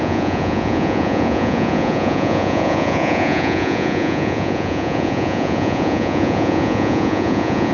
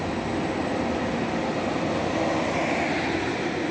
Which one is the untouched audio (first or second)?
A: second